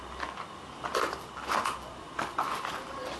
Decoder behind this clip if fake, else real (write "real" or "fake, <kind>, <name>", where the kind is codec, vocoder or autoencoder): real